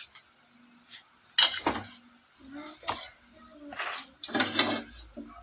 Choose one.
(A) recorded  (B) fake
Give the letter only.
A